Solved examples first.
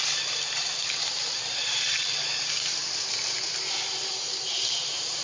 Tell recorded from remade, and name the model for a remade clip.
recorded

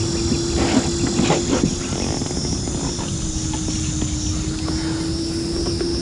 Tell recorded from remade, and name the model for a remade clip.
recorded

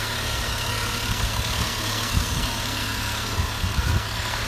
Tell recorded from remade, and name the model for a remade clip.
remade, codec, SNAC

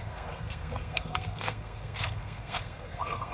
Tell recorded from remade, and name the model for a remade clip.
remade, codec, SNAC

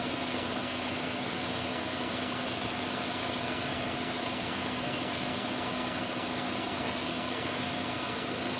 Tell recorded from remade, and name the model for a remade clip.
remade, codec, SNAC